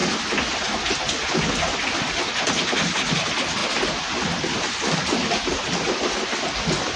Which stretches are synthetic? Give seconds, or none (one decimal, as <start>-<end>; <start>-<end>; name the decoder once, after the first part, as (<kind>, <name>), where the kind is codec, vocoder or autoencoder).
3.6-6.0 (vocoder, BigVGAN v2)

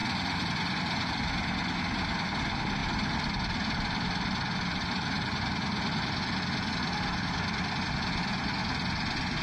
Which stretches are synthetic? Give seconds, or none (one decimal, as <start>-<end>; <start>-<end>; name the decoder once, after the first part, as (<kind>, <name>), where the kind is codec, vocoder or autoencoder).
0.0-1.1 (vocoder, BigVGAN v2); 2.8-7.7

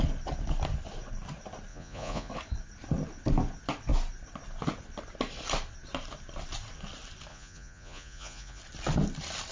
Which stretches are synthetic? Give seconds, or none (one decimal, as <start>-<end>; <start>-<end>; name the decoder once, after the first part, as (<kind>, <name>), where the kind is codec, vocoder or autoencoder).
1.7-2.3 (vocoder, Vocos); 7.3-8.6